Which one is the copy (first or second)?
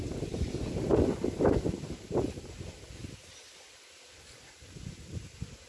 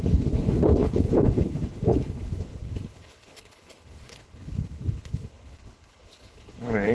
second